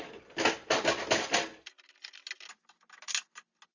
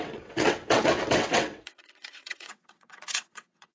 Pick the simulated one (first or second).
second